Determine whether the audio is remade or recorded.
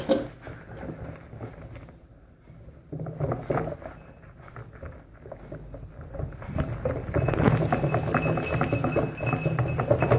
recorded